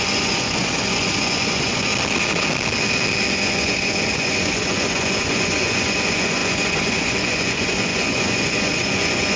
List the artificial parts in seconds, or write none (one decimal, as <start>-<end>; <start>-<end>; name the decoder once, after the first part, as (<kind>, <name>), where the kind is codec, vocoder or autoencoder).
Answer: 0.0-1.9 (vocoder, Vocos); 3.3-9.4